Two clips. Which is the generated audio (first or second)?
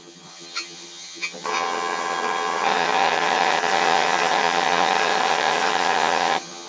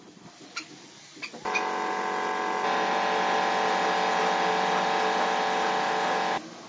first